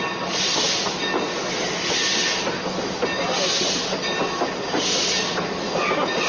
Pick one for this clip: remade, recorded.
recorded